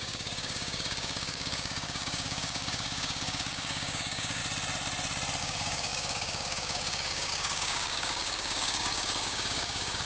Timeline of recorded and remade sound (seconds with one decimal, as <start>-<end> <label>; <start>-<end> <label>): 0.0-4.4 remade; 4.4-5.4 recorded; 5.4-10.1 remade